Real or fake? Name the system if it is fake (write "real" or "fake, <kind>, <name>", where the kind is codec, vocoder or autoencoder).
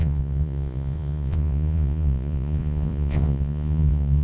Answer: fake, vocoder, Vocos